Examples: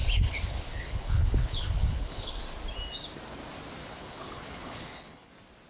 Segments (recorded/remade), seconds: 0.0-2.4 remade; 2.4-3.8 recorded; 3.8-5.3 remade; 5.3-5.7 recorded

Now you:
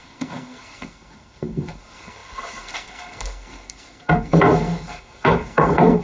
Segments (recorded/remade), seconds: 0.0-6.0 remade

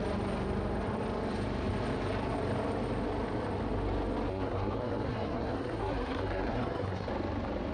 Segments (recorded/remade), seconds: 0.0-4.3 recorded; 4.3-7.1 remade; 7.1-7.7 recorded

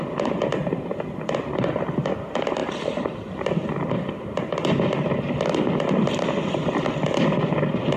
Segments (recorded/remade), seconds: 0.0-2.6 recorded; 2.6-3.3 remade; 3.3-8.0 recorded

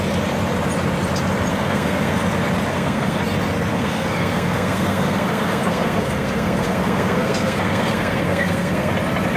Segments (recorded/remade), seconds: 0.0-1.5 recorded; 1.5-2.2 remade; 2.2-2.7 recorded; 2.7-3.2 remade; 3.2-3.7 recorded; 3.7-8.9 remade; 8.9-9.4 recorded

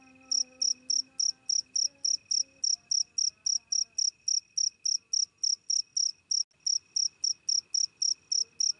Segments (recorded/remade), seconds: 0.0-8.8 recorded

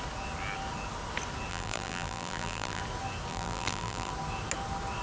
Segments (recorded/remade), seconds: 0.0-1.5 recorded; 1.5-2.8 remade; 2.8-3.3 recorded; 3.3-4.1 remade; 4.1-5.0 recorded